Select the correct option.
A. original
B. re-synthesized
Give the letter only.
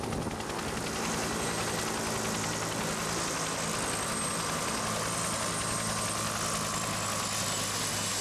A